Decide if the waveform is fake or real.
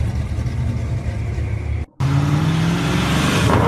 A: real